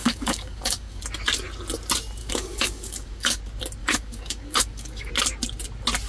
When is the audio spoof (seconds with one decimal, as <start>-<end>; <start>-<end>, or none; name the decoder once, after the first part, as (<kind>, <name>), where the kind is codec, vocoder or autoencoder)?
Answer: 0.0-1.0 (codec, DAC); 2.2-3.4; 3.8-5.1